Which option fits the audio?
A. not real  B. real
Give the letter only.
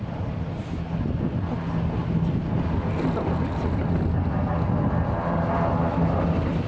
B